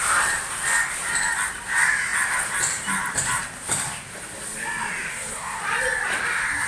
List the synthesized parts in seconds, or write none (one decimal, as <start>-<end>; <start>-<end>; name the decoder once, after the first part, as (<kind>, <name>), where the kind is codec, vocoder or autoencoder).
5.1-5.6 (codec, SNAC)